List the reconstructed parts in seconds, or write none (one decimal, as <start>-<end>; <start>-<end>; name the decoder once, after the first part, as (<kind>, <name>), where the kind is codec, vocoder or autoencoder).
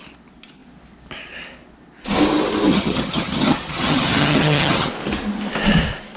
2.7-4.9 (vocoder, HiFi-GAN)